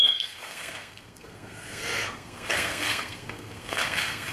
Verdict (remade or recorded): remade